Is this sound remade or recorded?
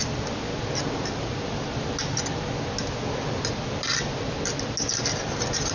recorded